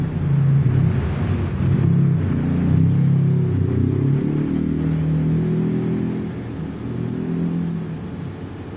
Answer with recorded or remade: recorded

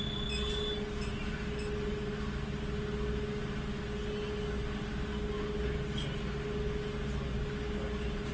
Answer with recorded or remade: recorded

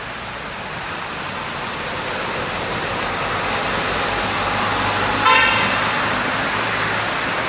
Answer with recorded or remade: recorded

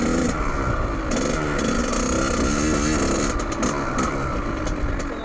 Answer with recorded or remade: recorded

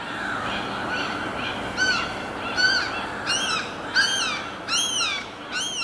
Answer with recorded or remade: recorded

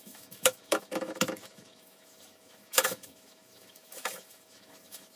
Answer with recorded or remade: remade